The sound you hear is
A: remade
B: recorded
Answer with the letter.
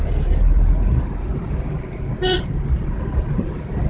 B